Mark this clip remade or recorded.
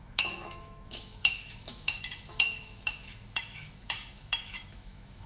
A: remade